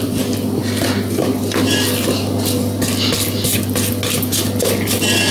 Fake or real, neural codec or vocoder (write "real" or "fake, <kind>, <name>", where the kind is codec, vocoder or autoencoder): real